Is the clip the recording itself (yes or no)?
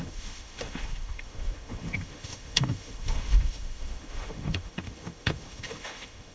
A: no